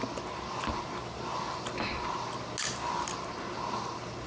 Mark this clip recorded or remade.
recorded